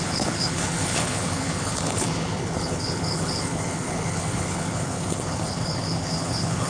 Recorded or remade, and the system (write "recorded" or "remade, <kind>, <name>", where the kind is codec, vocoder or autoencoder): remade, codec, HILCodec